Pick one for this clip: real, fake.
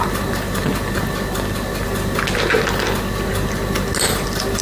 real